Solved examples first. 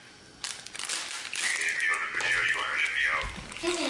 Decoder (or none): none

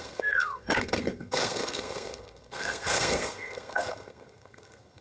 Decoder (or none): codec, SNAC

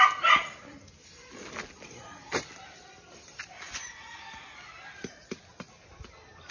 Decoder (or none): none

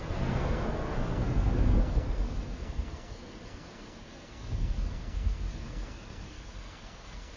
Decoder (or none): codec, SNAC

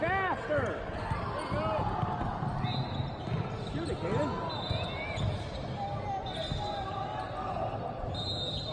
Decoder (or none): none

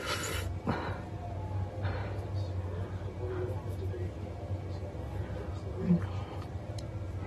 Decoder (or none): none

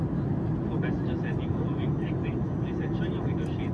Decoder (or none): none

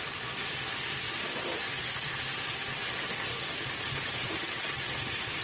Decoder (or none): none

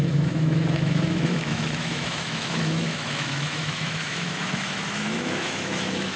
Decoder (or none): autoencoder, DAC-VAE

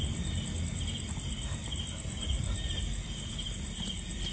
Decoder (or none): vocoder, BigVGAN v2